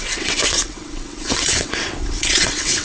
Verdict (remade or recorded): remade